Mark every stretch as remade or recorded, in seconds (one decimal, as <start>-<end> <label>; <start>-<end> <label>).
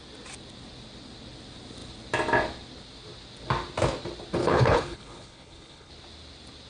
0.0-4.4 recorded; 4.4-5.9 remade; 5.9-6.7 recorded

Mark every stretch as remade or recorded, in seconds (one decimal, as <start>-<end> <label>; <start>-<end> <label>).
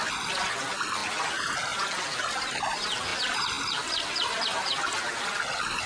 0.0-5.9 recorded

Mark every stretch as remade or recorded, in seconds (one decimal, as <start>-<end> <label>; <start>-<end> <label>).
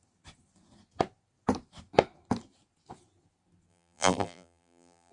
0.0-3.7 recorded; 3.7-5.1 remade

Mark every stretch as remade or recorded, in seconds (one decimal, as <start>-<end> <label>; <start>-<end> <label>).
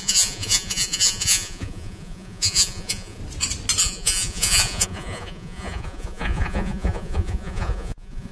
0.0-3.2 remade; 3.2-3.8 recorded; 3.8-8.3 remade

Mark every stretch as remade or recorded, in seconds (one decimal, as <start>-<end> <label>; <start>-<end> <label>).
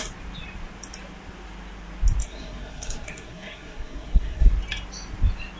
0.0-2.2 recorded; 2.2-4.5 remade; 4.5-5.6 recorded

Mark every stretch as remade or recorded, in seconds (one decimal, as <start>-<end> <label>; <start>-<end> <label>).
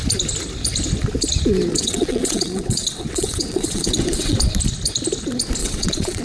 0.0-1.7 recorded; 1.7-4.4 remade; 4.4-5.6 recorded; 5.6-6.2 remade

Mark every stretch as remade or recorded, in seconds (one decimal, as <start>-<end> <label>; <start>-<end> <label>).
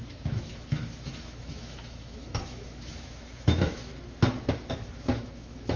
0.0-3.9 remade; 3.9-4.5 recorded; 4.5-5.8 remade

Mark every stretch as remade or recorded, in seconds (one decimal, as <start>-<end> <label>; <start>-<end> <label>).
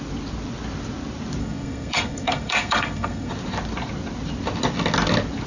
0.0-1.4 recorded; 1.4-3.3 remade; 3.3-5.5 recorded